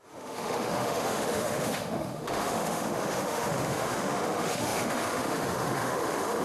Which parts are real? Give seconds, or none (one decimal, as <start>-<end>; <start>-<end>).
none